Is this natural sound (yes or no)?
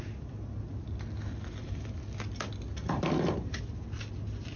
yes